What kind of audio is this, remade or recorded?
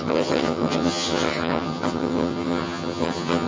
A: remade